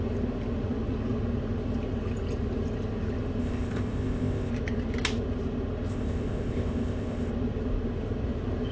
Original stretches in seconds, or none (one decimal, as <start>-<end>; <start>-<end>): 0.0-3.4; 4.5-5.9; 7.3-8.7